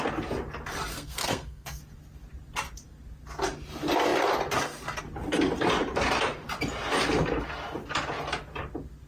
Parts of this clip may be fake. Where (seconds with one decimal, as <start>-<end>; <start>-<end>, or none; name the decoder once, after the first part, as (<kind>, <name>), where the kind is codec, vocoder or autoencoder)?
0.9-1.8 (codec, SNAC)